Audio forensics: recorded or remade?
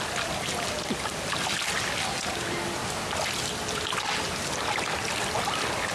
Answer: recorded